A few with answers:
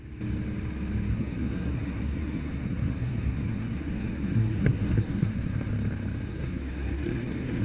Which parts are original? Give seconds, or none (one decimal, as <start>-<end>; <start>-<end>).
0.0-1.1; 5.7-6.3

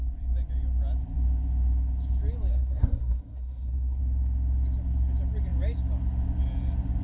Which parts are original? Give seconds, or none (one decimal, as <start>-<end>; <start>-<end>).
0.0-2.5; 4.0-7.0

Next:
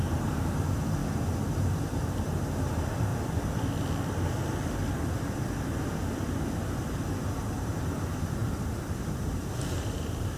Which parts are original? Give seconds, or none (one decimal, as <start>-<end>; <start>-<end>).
1.0-1.6; 3.1-7.5

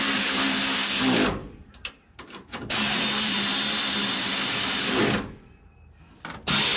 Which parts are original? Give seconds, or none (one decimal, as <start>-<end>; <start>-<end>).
0.0-1.4; 5.0-6.8

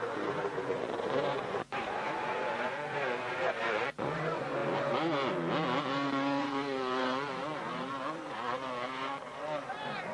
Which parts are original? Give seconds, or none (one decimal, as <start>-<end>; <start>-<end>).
4.6-5.8